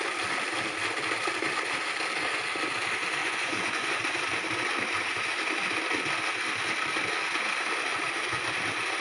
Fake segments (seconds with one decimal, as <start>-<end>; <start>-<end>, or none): 3.2-4.0; 7.9-8.5